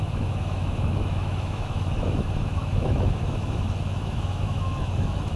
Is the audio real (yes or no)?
no